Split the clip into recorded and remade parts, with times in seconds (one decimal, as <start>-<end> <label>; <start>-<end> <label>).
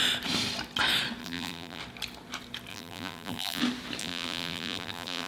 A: 0.0-1.2 recorded; 1.2-1.8 remade; 1.8-2.7 recorded; 2.7-3.6 remade; 3.6-4.0 recorded; 4.0-5.3 remade